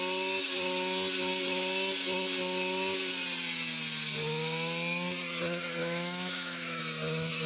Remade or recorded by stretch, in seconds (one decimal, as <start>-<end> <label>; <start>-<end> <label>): 0.0-5.8 recorded; 5.8-6.8 remade; 6.8-7.5 recorded